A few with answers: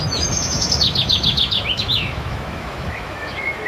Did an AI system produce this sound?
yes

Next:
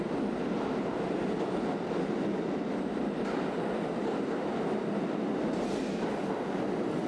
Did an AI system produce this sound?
no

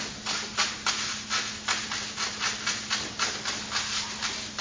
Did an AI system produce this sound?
no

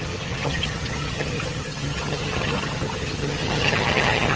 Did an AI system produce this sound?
yes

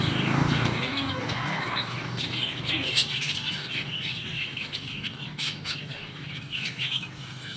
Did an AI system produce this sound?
yes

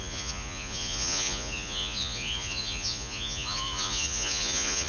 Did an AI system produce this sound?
yes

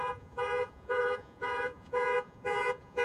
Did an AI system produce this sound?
yes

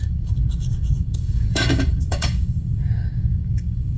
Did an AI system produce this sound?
yes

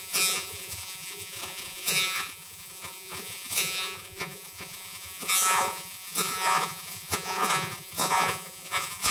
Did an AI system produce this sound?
yes